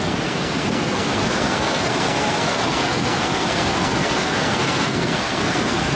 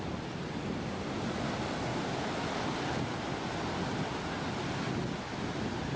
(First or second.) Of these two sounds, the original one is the second